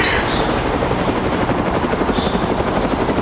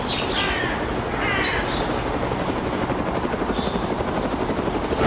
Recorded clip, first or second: second